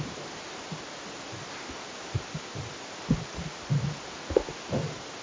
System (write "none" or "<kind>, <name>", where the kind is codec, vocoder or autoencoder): none